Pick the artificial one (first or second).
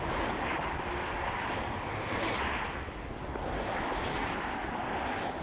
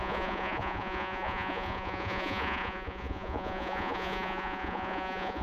second